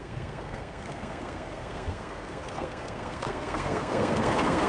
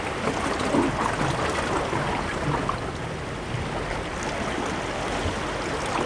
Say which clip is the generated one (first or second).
first